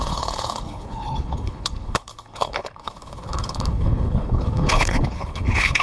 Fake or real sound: fake